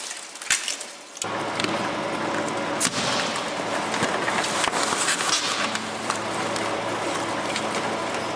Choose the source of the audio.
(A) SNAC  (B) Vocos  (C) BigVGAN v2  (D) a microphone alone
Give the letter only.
D